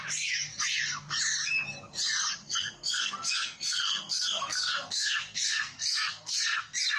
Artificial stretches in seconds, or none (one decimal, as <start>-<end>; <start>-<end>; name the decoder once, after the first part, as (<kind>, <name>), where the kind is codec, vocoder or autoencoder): 2.4-6.6 (codec, SNAC)